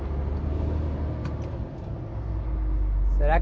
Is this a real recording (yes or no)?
yes